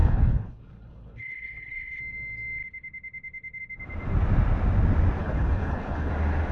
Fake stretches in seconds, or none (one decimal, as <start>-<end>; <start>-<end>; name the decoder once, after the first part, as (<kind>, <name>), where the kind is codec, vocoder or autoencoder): 0.0-2.0 (codec, HILCodec); 5.2-6.1